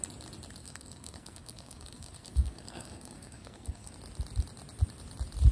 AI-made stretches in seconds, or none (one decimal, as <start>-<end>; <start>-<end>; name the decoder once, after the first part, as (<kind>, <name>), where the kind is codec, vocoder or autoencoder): 0.6-3.9 (codec, SNAC)